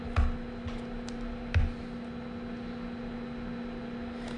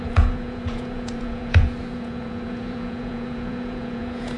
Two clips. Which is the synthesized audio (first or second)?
second